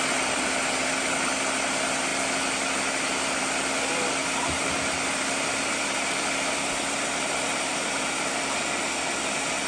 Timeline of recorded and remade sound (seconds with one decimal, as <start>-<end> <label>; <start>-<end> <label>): 0.0-4.2 recorded; 4.2-8.8 remade; 8.8-9.7 recorded

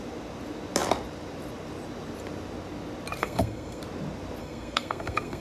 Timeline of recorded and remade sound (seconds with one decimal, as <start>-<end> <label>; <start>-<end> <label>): 0.0-3.2 recorded; 3.2-3.8 remade; 3.8-4.4 recorded; 4.4-5.4 remade

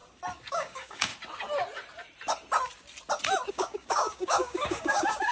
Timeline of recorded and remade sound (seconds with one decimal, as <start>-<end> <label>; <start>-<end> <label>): 0.0-0.5 recorded; 0.5-1.1 remade; 1.1-3.5 recorded; 3.5-5.3 remade

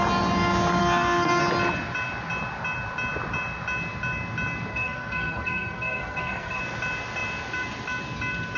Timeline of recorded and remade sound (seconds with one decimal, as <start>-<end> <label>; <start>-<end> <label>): 0.0-0.8 recorded; 0.8-1.4 remade; 1.4-4.7 recorded; 4.7-6.6 remade; 6.6-8.6 recorded

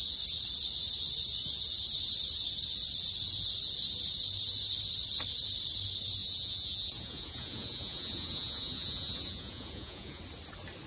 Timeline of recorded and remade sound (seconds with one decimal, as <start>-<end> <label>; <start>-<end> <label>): 0.0-6.2 recorded; 6.2-10.2 remade; 10.2-10.9 recorded

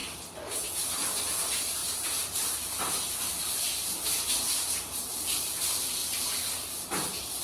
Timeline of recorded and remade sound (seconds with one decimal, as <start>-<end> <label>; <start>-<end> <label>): 0.0-1.2 recorded; 1.2-6.0 remade; 6.0-6.9 recorded; 6.9-7.4 remade

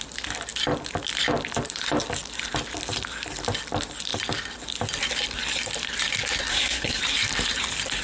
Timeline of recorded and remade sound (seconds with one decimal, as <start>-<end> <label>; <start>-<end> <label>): 0.0-6.5 recorded; 6.5-7.0 remade; 7.0-8.0 recorded